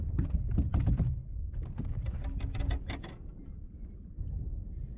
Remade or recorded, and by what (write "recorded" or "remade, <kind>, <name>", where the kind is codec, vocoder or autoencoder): recorded